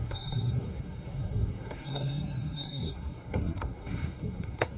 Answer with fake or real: fake